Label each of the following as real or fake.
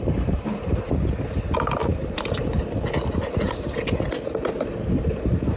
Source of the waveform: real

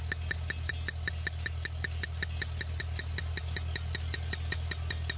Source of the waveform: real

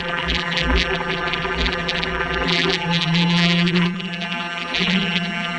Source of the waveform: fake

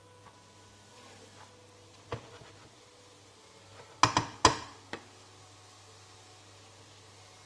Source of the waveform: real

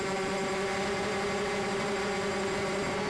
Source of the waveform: fake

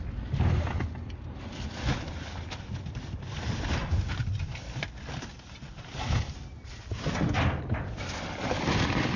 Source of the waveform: real